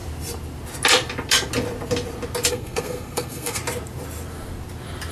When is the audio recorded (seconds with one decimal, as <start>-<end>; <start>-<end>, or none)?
0.0-2.5; 3.6-5.1